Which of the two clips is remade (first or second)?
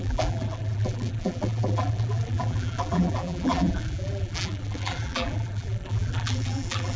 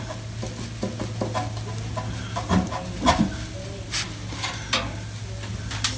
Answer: first